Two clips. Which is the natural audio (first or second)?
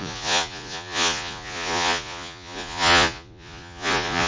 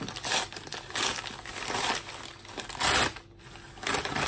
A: second